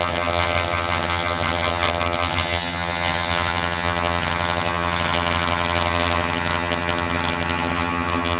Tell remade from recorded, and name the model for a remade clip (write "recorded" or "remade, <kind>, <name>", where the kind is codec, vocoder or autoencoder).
remade, vocoder, HiFi-GAN